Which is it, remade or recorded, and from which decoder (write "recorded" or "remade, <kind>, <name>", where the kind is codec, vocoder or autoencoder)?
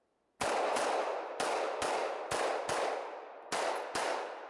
recorded